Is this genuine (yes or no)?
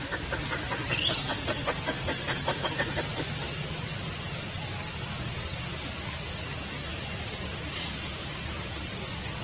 yes